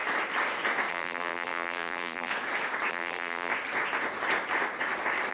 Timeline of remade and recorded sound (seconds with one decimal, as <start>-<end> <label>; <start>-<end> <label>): 0.0-0.9 recorded; 0.9-2.3 remade; 2.3-2.9 recorded; 2.9-3.5 remade; 3.5-5.3 recorded